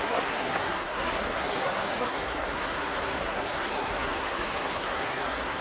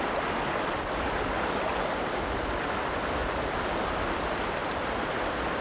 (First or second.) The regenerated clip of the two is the first